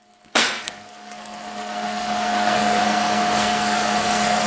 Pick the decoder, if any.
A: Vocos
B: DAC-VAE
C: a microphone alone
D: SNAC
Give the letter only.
D